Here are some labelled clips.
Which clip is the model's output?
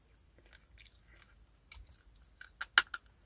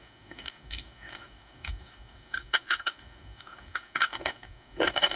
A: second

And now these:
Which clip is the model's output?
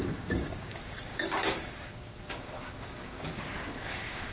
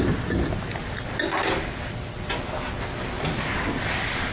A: first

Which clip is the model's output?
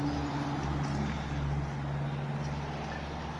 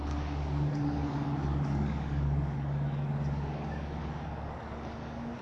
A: second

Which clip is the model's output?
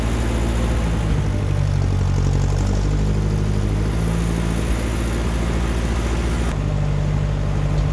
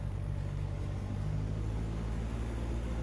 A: second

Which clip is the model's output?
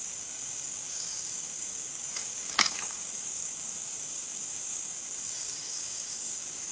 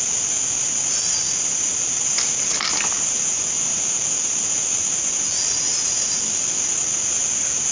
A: first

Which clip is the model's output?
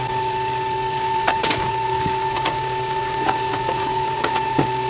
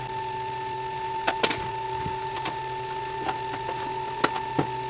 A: first